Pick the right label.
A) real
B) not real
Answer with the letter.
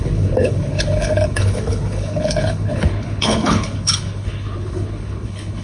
B